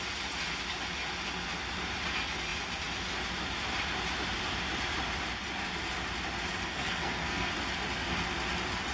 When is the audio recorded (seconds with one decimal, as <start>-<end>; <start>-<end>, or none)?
0.0-6.5; 7.5-8.9